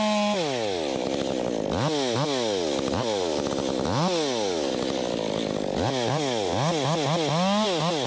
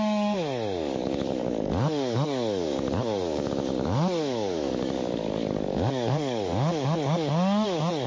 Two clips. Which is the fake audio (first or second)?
second